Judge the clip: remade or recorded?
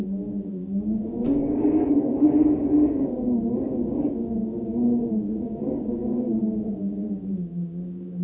remade